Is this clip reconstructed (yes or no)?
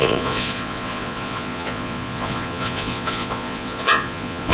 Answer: yes